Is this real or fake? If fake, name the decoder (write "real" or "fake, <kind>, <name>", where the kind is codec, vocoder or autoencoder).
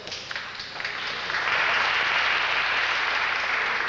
real